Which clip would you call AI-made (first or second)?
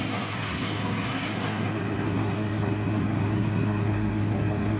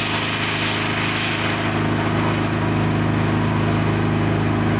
first